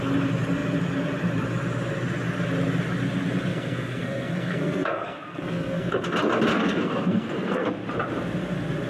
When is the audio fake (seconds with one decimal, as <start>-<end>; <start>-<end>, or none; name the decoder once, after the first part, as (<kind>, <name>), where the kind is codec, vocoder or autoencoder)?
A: 3.5-6.0 (codec, SNAC); 6.5-7.7